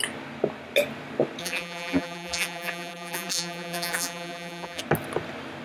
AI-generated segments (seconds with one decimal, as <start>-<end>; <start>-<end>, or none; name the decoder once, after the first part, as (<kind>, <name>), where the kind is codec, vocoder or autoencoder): 1.4-4.8 (vocoder, BigVGAN v2)